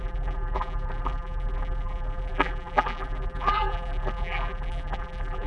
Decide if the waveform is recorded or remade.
remade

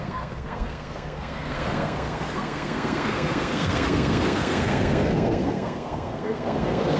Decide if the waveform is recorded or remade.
remade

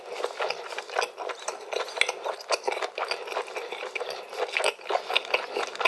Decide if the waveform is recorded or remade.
recorded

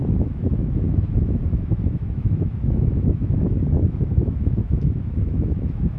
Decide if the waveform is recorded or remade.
remade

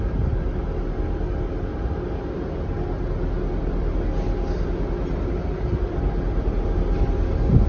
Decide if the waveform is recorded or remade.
recorded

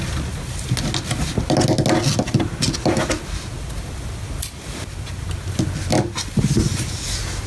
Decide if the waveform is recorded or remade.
recorded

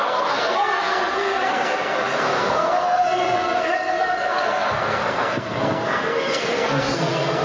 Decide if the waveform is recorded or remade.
remade